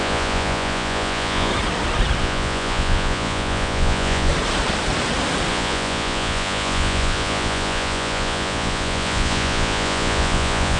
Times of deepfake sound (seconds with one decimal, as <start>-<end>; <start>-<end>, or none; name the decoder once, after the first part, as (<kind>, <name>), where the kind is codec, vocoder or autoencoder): 0.0-1.5 (vocoder, Vocos); 2.2-4.3; 5.5-10.8

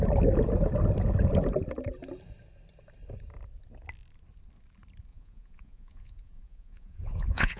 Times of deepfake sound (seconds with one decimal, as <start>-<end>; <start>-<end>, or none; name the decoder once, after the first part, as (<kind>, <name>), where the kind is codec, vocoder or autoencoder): 5.1-7.6 (vocoder, Vocos)

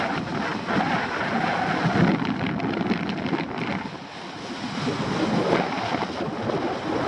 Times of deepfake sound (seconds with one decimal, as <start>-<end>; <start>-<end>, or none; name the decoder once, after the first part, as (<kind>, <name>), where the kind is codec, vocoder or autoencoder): none

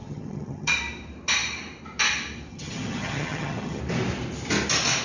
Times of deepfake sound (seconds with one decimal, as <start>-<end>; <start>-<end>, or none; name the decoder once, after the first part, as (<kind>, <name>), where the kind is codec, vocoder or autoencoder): 0.0-0.7 (vocoder, HiFi-GAN); 2.5-3.8

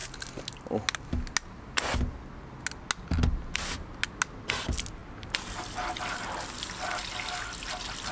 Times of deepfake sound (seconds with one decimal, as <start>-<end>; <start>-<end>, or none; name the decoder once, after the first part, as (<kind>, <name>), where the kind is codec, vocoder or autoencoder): none